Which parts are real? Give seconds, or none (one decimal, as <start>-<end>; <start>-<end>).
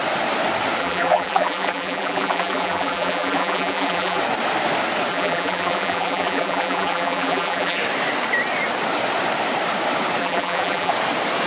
0.0-0.8; 4.2-5.1; 7.8-10.2; 10.9-11.5